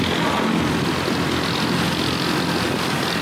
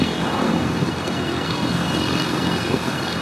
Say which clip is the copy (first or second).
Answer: second